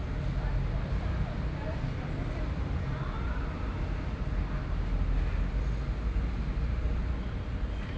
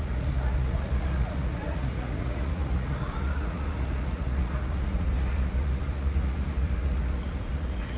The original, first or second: first